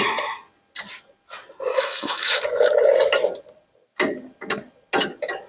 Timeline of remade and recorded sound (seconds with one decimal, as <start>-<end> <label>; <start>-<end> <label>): 0.0-1.7 recorded; 1.7-2.4 remade; 2.4-5.5 recorded